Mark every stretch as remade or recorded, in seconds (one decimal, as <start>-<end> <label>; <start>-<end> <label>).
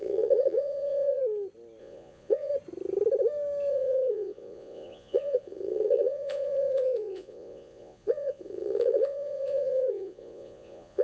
0.0-1.2 remade; 1.2-1.8 recorded; 1.8-2.5 remade; 2.5-3.7 recorded; 3.7-11.0 remade